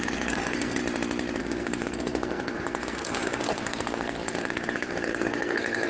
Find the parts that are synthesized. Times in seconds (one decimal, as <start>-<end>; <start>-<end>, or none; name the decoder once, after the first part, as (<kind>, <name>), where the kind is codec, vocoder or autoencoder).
0.0-0.8 (codec, SNAC); 1.4-5.9